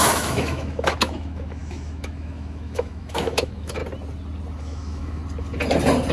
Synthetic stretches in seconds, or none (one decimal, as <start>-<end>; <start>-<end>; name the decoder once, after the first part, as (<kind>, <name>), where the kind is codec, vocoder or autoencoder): 0.0-3.8 (autoencoder, DAC-VAE); 4.6-5.2